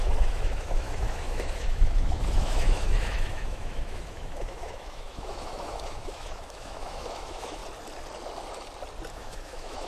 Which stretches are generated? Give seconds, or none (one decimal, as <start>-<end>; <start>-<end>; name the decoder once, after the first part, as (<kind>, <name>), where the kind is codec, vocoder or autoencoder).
0.0-7.6 (autoencoder, DAC-VAE); 9.1-9.9